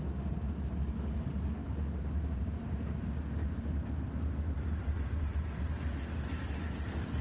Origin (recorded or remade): recorded